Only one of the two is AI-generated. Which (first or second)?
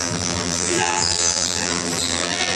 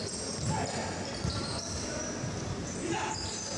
first